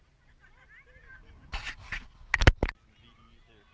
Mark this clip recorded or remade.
recorded